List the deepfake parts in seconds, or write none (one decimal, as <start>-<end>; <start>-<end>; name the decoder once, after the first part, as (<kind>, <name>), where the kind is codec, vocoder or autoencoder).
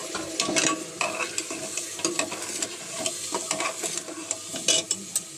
none